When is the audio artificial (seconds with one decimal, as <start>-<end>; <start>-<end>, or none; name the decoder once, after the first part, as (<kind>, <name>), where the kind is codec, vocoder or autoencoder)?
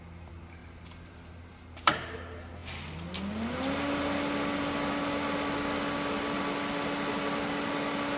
none